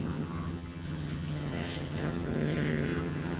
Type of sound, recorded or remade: remade